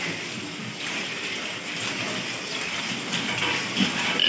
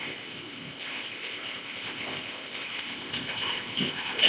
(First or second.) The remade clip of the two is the second